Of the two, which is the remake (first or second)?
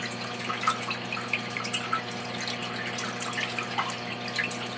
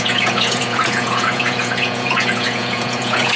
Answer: second